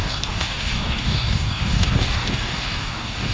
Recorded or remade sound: remade